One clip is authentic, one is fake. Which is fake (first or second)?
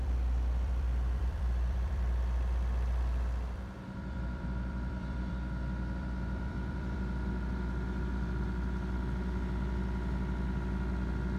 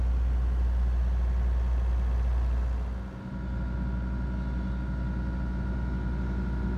first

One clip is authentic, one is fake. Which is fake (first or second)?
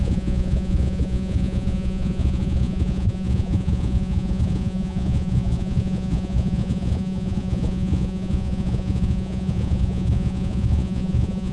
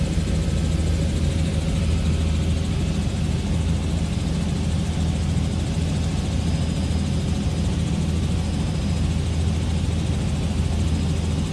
first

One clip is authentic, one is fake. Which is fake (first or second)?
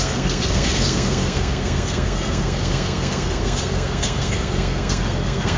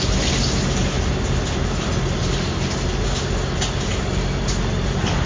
first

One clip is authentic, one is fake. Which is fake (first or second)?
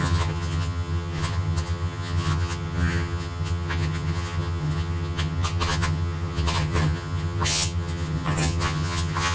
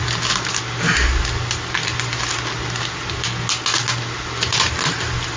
first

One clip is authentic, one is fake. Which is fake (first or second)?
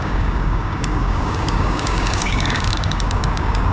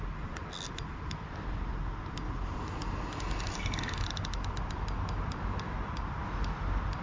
first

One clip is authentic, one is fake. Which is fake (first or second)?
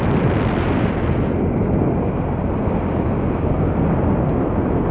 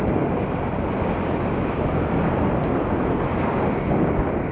second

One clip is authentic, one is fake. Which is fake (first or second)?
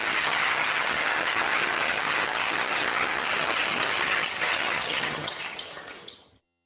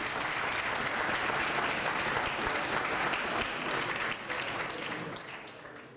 first